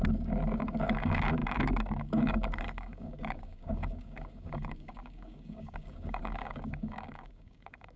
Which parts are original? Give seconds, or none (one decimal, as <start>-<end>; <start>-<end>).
none